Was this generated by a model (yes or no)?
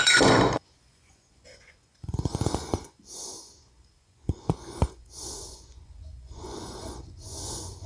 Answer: yes